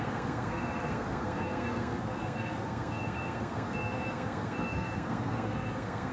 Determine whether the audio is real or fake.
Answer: fake